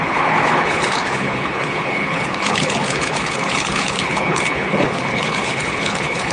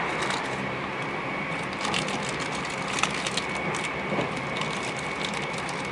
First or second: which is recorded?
second